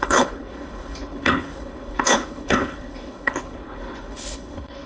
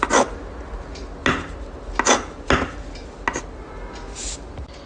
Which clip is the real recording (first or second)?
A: second